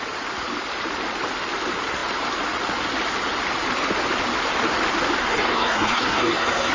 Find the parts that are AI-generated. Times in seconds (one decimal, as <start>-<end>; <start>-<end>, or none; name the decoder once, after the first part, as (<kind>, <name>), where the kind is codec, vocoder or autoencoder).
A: 5.2-6.7 (codec, SNAC)